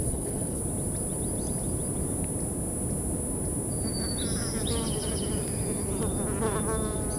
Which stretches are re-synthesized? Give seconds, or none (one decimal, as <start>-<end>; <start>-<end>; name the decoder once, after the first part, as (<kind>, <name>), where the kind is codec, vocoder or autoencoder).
0.0-0.6 (codec, HILCodec)